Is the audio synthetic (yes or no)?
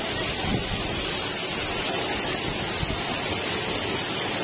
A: no